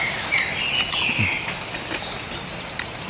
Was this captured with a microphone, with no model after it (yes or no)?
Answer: yes